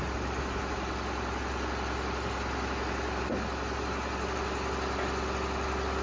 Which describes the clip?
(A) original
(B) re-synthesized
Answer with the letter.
A